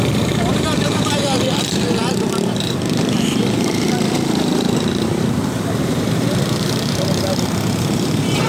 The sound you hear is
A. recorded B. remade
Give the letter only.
B